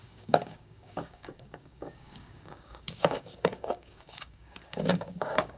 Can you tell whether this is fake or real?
fake